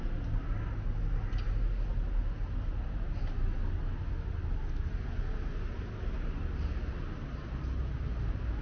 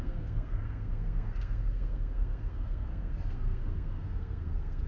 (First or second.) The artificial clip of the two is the second